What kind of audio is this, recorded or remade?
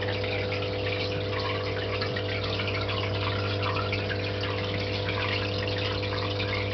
recorded